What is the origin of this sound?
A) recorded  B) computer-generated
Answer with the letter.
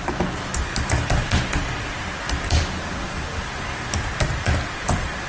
A